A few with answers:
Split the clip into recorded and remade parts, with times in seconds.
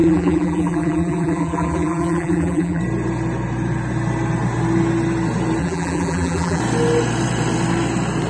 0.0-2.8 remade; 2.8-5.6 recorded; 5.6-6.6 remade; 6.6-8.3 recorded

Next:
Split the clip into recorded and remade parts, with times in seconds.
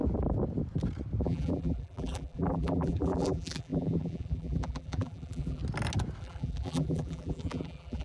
0.0-1.2 recorded; 1.2-5.6 remade; 5.6-6.2 recorded; 6.2-8.0 remade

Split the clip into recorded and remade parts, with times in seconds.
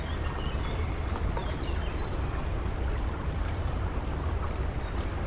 0.0-1.4 recorded; 1.4-3.6 remade; 3.6-5.3 recorded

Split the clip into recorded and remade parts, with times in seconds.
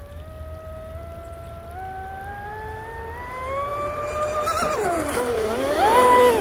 0.0-3.7 recorded; 3.7-5.5 remade; 5.5-6.4 recorded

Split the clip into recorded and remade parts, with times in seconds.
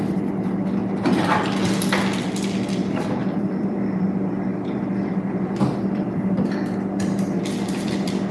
0.0-0.8 remade; 0.8-3.2 recorded; 3.2-8.3 remade